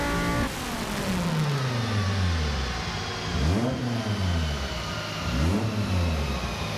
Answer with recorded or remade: recorded